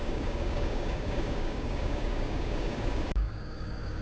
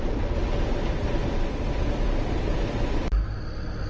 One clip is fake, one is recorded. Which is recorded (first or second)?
second